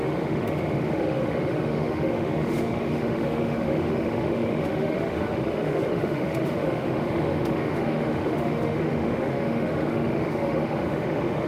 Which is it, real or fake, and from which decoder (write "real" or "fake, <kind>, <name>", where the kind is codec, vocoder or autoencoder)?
fake, autoencoder, DAC-VAE